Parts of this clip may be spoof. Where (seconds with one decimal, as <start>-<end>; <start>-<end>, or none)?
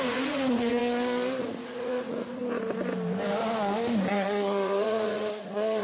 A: 0.0-0.8; 1.4-2.4; 4.1-5.8